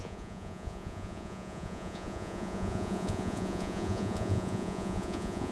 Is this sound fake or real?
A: fake